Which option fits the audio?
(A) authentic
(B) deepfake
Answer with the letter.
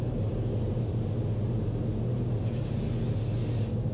A